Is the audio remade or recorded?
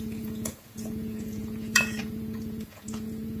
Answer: remade